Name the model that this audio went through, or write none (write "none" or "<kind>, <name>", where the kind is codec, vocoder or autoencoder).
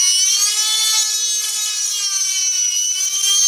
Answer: none